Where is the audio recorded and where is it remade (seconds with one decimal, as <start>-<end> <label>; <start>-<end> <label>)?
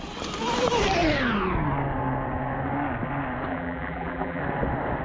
0.0-3.5 recorded; 3.5-4.4 remade; 4.4-5.0 recorded